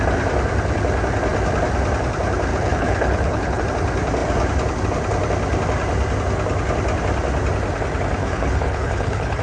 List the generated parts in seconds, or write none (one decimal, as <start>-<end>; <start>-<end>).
2.5-3.6; 8.2-9.4